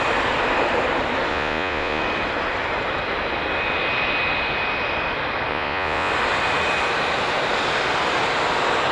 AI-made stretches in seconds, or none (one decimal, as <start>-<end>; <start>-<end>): 1.3-2.0; 5.5-6.1